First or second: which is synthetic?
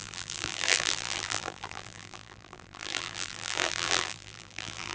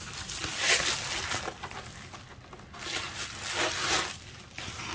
first